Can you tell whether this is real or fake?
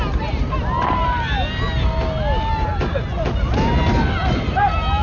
real